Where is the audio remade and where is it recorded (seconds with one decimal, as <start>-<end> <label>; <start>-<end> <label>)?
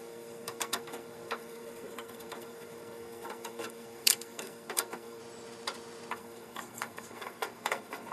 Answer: 0.0-5.2 remade; 5.2-6.1 recorded; 6.1-8.1 remade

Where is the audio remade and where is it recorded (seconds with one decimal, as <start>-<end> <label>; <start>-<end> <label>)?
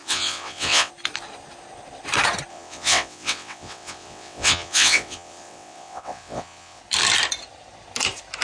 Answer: 0.0-0.9 remade; 0.9-2.5 recorded; 2.5-6.8 remade; 6.8-8.4 recorded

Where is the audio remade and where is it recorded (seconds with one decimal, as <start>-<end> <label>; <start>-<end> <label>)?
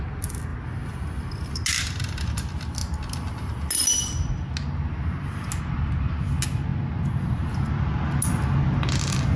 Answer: 0.0-9.4 recorded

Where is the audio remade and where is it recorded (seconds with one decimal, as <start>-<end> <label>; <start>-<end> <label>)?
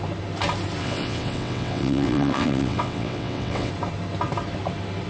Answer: 0.0-0.8 recorded; 0.8-3.7 remade; 3.7-5.1 recorded